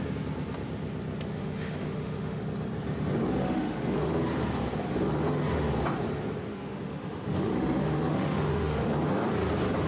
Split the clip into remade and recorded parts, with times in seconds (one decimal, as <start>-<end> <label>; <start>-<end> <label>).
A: 0.0-1.3 recorded; 1.3-2.4 remade; 2.4-3.4 recorded; 3.4-4.1 remade; 4.1-6.5 recorded; 6.5-8.9 remade; 8.9-9.9 recorded

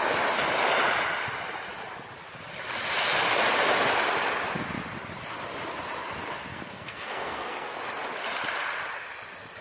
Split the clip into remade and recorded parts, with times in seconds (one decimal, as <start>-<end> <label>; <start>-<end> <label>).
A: 0.0-6.5 recorded; 6.5-7.8 remade; 7.8-9.6 recorded

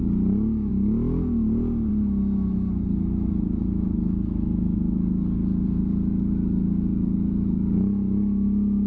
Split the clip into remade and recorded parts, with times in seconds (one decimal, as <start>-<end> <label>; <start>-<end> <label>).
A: 0.0-8.9 recorded